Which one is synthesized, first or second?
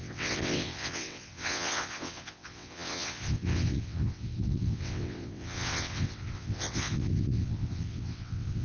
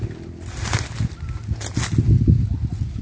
first